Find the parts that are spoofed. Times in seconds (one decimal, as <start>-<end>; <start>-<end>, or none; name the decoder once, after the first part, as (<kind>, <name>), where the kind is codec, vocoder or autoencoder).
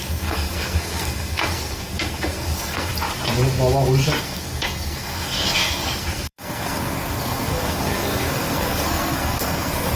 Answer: 0.0-2.9 (codec, SNAC); 4.2-9.9